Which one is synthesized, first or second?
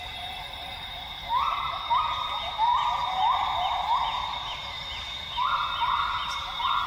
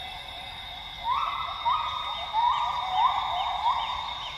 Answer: first